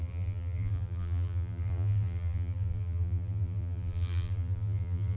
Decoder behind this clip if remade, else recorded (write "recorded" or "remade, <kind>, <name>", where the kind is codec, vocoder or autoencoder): remade, vocoder, BigVGAN v2